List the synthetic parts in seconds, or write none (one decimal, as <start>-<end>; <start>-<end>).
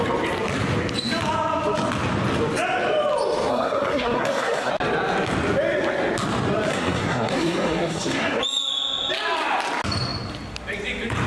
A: 3.5-4.7; 6.7-8.4